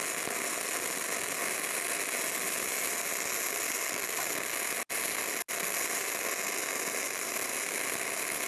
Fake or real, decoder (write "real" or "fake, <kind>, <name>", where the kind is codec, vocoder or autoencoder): real